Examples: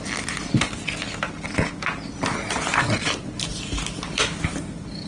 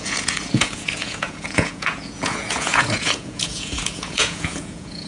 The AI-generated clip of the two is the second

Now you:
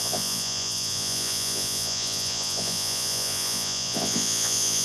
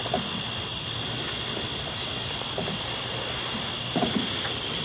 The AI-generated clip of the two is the first